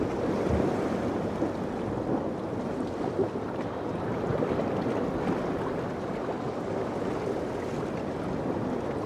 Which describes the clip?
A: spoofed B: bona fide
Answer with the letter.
B